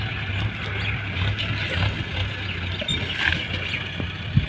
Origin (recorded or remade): recorded